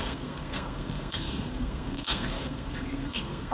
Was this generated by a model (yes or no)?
yes